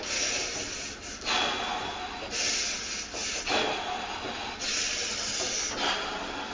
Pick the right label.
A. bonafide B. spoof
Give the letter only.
A